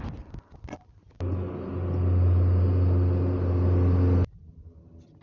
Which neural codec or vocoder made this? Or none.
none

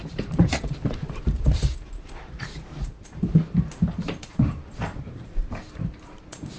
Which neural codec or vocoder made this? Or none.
vocoder, BigVGAN v2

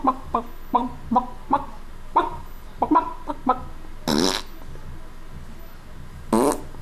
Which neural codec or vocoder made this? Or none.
none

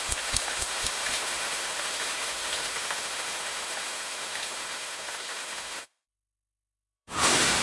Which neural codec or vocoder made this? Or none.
autoencoder, DAC-VAE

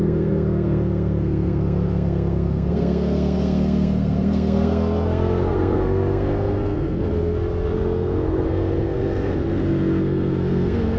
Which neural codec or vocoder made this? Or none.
codec, SNAC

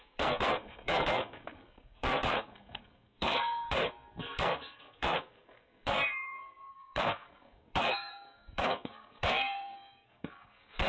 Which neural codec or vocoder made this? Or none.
codec, SNAC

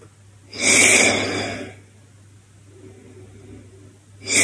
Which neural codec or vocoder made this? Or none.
none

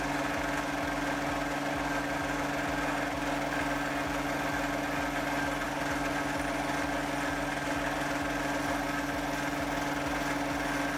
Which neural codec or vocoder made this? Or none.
none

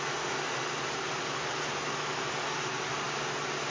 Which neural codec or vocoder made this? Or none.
none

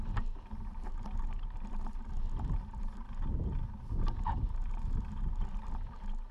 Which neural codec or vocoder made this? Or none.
none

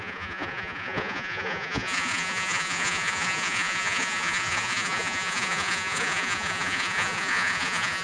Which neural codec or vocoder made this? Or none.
vocoder, Vocos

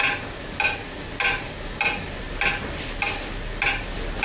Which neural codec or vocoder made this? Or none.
none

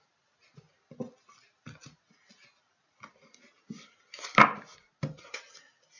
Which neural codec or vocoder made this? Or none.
none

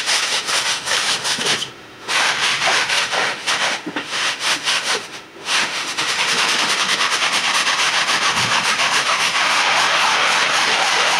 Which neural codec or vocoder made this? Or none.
autoencoder, DAC-VAE